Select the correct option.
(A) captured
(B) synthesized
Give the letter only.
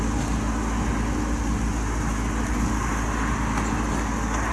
A